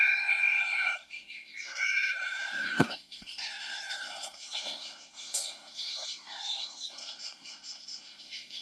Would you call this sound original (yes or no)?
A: no